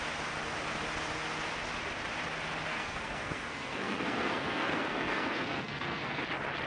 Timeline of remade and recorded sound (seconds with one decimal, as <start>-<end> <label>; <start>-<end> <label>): 0.0-2.7 recorded; 2.7-6.2 remade; 6.2-6.7 recorded